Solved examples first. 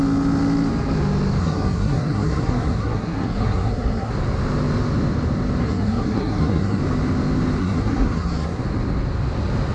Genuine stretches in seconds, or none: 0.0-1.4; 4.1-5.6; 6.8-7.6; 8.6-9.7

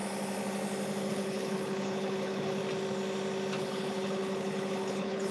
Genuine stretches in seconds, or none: 0.0-1.1; 2.6-3.6

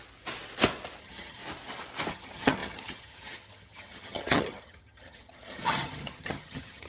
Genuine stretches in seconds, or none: 0.0-1.0; 1.4-2.1

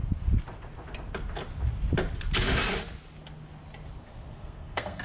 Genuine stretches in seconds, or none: 0.0-4.3

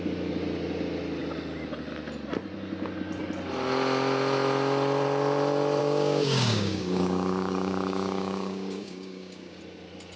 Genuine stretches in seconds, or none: 0.0-5.8; 9.6-10.2

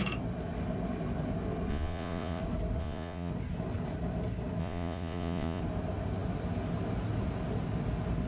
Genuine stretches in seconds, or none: 0.0-1.7; 2.4-2.8; 3.3-4.6; 5.6-8.3